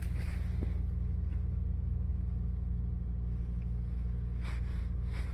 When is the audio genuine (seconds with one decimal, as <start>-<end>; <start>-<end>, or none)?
0.0-5.3